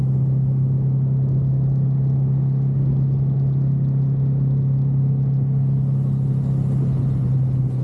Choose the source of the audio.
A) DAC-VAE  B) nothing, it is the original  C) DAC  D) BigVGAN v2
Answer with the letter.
B